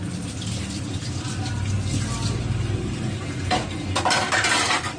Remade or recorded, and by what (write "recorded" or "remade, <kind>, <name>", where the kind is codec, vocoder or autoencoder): recorded